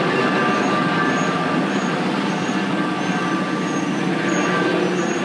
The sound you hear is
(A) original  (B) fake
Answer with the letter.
A